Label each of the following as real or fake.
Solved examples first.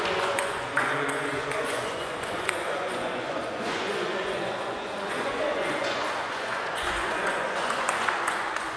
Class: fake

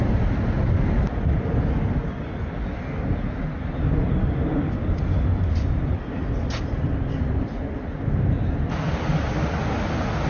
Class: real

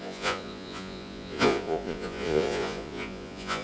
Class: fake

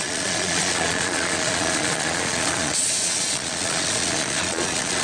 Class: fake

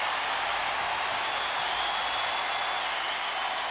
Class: real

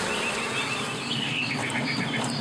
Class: real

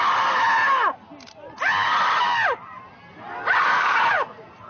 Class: real